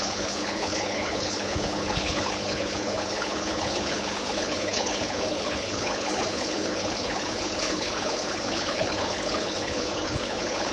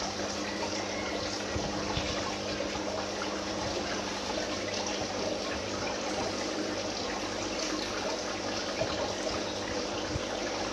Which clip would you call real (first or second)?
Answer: second